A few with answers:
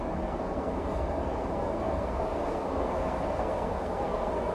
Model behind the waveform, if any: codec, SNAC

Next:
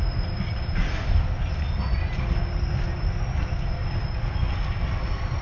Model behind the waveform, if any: none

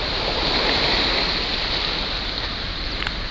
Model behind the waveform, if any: none